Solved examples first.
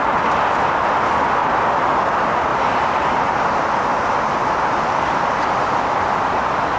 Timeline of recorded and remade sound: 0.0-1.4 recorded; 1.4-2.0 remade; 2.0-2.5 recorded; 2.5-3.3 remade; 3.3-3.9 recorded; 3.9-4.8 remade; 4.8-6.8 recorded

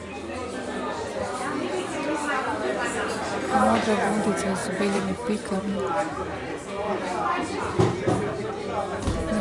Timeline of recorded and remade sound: 0.0-2.7 recorded; 2.7-3.4 remade; 3.4-4.6 recorded; 4.6-9.0 remade; 9.0-9.4 recorded

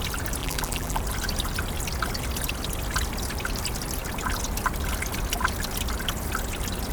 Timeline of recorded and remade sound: 0.0-0.4 recorded; 0.4-1.0 remade; 1.0-6.9 recorded

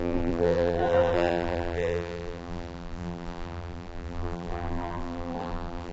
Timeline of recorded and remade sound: 0.0-5.9 remade